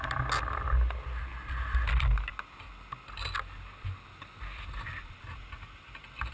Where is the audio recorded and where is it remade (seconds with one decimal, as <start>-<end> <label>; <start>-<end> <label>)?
0.0-6.3 recorded